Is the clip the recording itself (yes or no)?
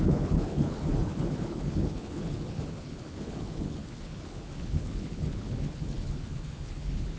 no